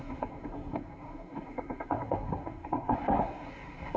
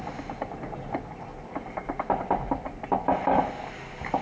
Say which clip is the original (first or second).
second